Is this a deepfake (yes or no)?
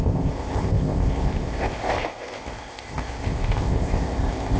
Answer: yes